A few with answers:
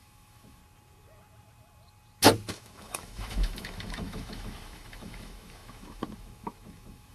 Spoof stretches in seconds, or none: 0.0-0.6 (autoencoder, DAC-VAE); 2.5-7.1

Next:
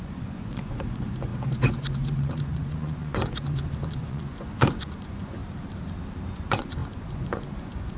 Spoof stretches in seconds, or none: 0.0-5.4 (vocoder, Vocos); 6.3-8.0

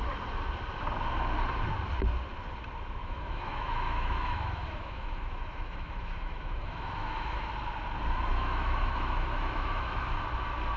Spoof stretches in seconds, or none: 3.0-7.5 (autoencoder, DAC-VAE); 8.3-10.0